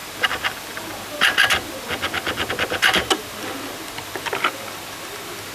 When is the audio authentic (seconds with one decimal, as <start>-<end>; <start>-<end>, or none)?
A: 0.0-5.5

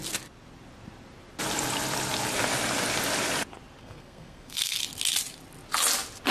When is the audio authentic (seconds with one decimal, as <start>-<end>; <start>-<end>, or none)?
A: 0.0-3.8; 4.8-6.3

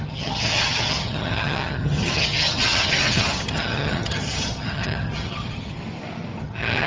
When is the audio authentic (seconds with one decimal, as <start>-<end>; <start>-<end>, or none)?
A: 5.8-6.4

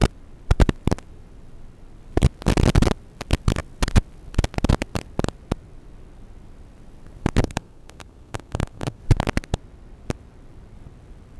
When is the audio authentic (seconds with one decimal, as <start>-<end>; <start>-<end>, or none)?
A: 0.0-7.4; 9.0-11.4

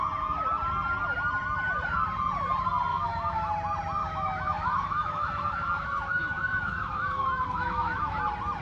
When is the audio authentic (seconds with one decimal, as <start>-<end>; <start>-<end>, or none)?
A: 0.0-2.9; 3.5-4.0; 8.2-8.6

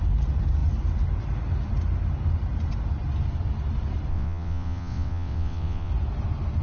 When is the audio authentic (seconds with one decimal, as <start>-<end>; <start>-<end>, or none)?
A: 0.0-4.1; 5.9-6.6

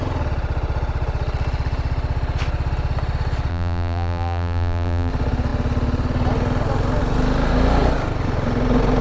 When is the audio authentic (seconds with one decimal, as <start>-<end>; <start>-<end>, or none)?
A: 0.0-3.5; 5.1-9.0